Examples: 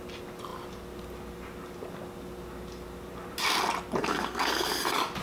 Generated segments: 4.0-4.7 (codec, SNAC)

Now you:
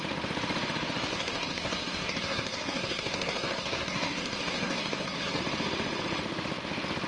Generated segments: 1.1-5.4 (codec, SNAC)

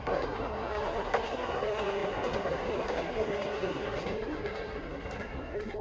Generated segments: 0.0-5.8 (codec, SNAC)

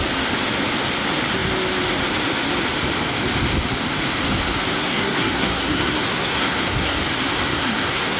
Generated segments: 4.8-7.0 (codec, SNAC); 7.5-8.2

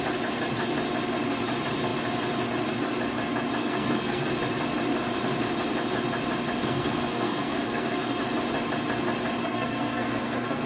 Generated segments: 3.6-4.3 (codec, SNAC); 6.6-8.2; 9.4-10.7

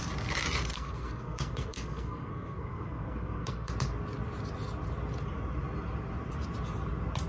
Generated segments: 0.7-3.7 (codec, SNAC)